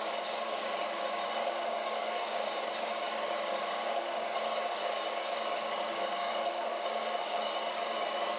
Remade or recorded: remade